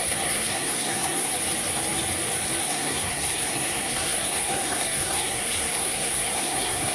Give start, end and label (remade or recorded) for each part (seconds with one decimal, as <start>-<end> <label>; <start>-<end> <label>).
0.0-1.3 remade; 1.3-2.6 recorded; 2.6-6.9 remade